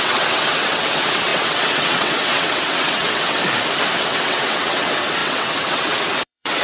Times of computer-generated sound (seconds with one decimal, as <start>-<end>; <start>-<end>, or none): 0.0-3.4; 4.0-6.6